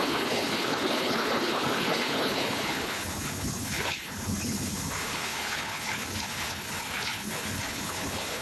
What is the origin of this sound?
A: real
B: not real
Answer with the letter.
B